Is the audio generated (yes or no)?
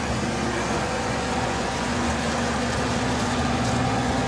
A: yes